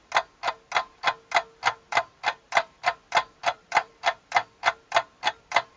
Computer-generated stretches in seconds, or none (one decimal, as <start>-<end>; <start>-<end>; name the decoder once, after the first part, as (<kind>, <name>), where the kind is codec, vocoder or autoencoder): 1.9-5.8 (vocoder, BigVGAN v2)